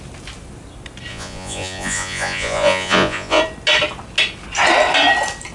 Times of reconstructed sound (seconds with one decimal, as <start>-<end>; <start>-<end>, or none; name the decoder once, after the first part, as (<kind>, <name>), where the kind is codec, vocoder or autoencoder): 1.1-3.4 (vocoder, Vocos)